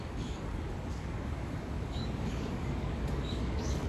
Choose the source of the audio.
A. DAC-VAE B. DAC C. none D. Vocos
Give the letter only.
B